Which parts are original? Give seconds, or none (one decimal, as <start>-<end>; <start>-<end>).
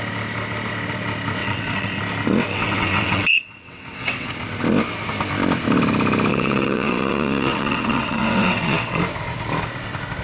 0.0-1.4; 2.0-2.5; 4.3-6.3; 9.0-10.2